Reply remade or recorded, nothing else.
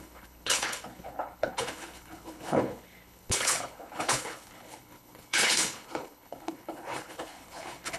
remade